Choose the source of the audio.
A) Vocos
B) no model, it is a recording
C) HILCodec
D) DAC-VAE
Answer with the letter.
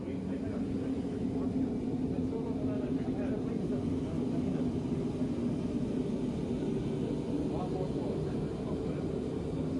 B